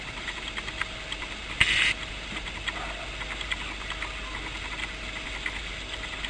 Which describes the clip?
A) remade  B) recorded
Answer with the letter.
B